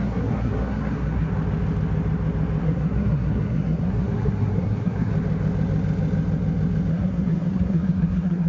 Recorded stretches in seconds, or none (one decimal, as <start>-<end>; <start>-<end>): 1.3-2.6; 5.1-6.9